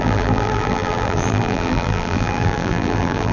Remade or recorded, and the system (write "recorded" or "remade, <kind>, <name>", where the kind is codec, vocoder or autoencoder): remade, vocoder, BigVGAN v2